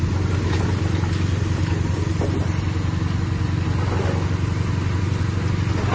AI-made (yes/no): no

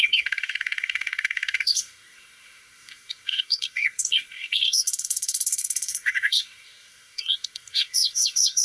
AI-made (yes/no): yes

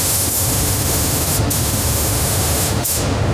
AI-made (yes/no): yes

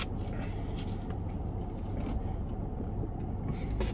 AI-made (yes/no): no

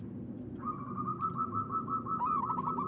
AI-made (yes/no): no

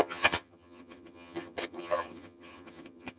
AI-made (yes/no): yes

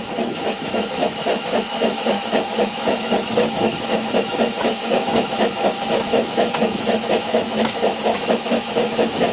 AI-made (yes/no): yes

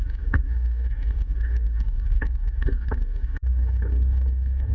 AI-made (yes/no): yes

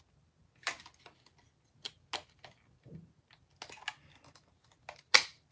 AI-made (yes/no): no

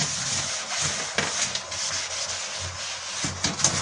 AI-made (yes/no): no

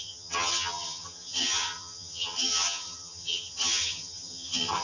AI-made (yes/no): yes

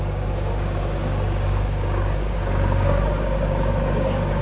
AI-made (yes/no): yes